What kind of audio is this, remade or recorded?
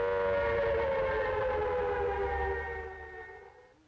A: recorded